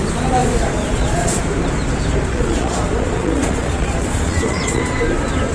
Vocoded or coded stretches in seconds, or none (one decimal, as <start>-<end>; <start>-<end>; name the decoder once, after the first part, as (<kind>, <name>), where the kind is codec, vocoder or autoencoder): 0.4-1.4 (vocoder, Vocos); 2.3-4.8